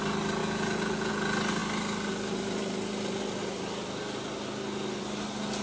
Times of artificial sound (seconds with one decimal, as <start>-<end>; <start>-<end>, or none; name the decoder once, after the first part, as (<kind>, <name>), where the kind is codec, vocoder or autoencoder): 0.4-1.1 (vocoder, Vocos)